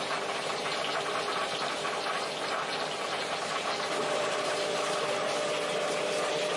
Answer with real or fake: fake